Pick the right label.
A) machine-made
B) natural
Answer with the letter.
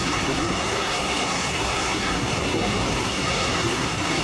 A